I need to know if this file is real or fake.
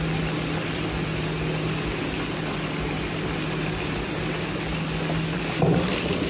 real